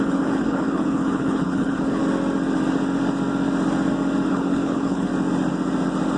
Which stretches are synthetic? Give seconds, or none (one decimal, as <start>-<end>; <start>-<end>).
0.0-2.0; 4.3-5.1